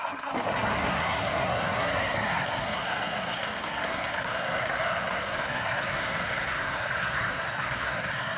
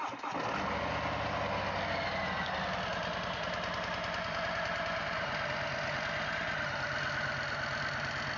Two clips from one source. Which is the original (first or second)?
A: second